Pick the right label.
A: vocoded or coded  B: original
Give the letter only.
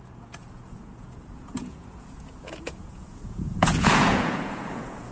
A